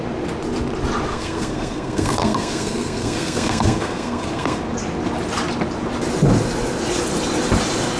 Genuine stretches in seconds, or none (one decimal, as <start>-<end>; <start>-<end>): 0.0-1.1; 4.6-8.0